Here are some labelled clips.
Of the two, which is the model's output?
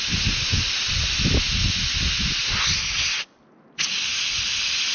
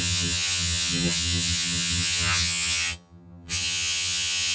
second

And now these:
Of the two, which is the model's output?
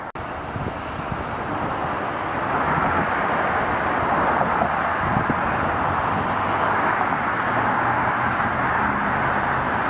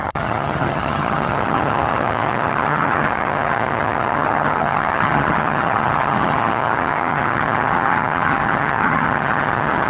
second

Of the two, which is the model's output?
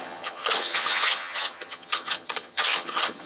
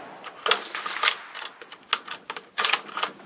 first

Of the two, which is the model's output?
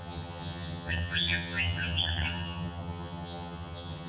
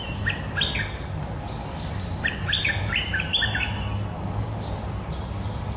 first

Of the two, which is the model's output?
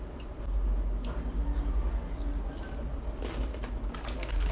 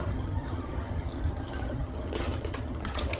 second